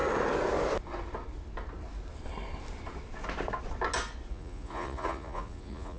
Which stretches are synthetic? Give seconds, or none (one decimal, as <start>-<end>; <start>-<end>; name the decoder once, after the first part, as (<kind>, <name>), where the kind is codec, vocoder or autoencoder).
4.3-6.0 (vocoder, Vocos)